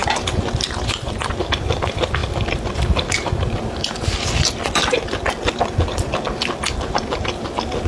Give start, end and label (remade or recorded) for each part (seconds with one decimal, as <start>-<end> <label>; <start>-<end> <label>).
0.0-1.3 remade; 1.3-7.9 recorded